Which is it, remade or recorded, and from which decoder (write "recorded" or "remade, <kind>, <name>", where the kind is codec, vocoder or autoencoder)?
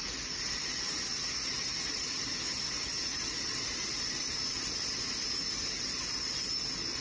recorded